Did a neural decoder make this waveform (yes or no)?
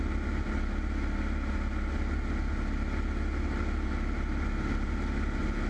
no